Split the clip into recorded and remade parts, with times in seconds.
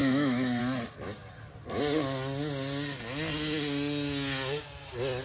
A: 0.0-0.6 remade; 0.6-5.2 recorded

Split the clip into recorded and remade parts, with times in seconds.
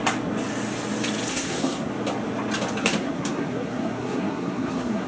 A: 0.0-1.3 recorded; 1.3-1.9 remade; 1.9-2.8 recorded; 2.8-5.1 remade